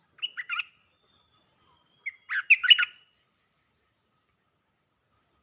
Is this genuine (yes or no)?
yes